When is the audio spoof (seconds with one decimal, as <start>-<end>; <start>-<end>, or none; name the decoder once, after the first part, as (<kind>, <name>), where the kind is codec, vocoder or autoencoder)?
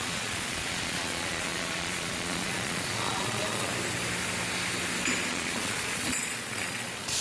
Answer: 0.0-3.7 (vocoder, Vocos); 5.3-7.2